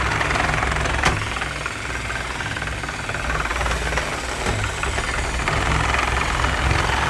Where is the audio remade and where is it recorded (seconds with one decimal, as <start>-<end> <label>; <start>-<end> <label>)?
0.0-7.1 recorded